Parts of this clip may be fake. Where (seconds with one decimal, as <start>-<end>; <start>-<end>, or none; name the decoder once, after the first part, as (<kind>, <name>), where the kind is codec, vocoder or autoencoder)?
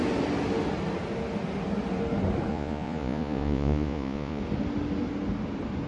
2.5-4.4 (vocoder, Vocos)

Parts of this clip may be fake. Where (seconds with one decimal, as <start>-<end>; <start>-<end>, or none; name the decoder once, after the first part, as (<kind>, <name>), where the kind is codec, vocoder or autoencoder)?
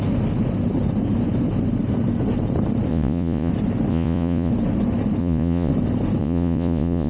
2.9-3.5 (vocoder, Vocos); 3.9-4.5; 5.2-5.7; 6.2-7.1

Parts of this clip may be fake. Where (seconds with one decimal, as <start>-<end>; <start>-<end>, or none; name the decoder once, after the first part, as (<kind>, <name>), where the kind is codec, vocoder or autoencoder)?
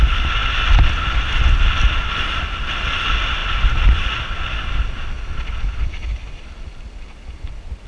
none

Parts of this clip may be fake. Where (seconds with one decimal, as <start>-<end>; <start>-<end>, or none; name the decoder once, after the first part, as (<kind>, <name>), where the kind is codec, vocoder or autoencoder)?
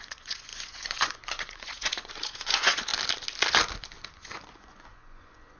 0.0-2.9 (vocoder, Vocos); 4.1-5.6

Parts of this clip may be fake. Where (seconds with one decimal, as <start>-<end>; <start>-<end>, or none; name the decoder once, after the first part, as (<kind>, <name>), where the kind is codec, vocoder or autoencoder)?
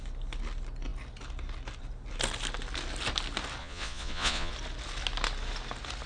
3.6-4.5 (vocoder, Vocos)